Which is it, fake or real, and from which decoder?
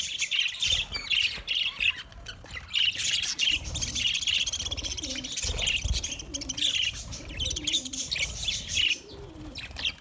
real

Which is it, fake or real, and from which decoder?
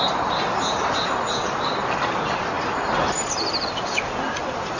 fake, vocoder, BigVGAN v2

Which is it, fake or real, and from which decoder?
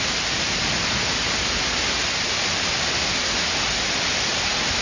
real